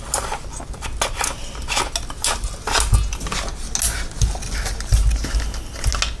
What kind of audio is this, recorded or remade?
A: recorded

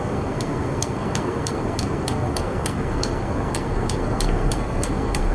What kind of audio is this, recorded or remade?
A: remade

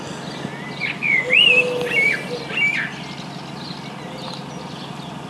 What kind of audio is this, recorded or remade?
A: recorded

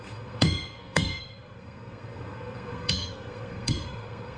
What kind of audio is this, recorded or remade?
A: remade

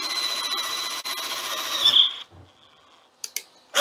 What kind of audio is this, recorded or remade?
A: recorded